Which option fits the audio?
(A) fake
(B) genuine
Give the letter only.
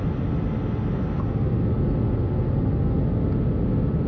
B